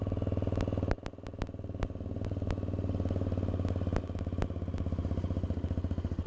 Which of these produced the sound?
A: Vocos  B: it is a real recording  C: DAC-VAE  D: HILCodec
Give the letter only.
B